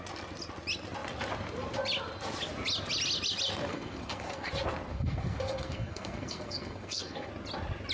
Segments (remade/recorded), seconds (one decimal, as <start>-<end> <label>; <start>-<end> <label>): 0.0-3.7 recorded; 3.7-4.5 remade; 4.5-4.9 recorded; 4.9-7.3 remade; 7.3-7.9 recorded